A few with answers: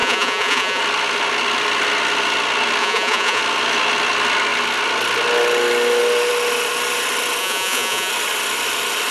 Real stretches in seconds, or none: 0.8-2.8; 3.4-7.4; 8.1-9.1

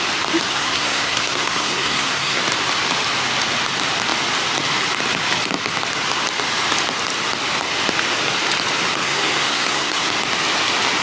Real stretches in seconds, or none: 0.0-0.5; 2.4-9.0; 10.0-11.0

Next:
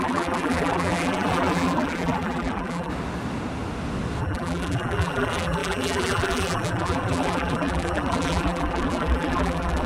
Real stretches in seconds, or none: 2.9-4.2

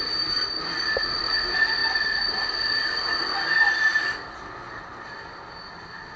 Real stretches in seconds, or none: 0.0-6.2

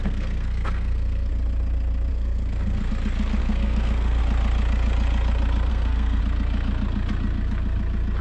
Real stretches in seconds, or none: 1.3-2.1; 2.9-3.4; 4.2-5.7; 6.2-8.2

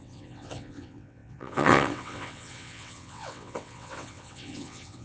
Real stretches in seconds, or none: none